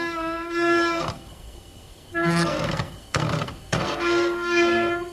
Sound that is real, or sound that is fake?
fake